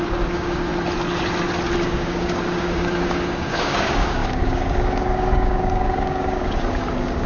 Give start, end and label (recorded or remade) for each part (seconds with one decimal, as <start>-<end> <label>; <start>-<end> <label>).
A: 0.0-0.7 remade; 0.7-1.8 recorded; 1.8-7.3 remade